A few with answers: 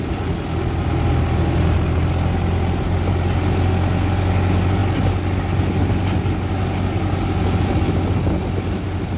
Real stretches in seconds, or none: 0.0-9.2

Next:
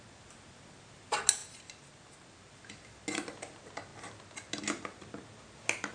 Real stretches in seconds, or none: 0.0-5.9

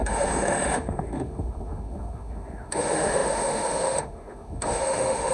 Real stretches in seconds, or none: none